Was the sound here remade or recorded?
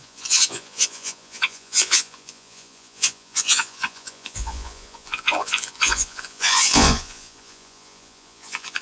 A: remade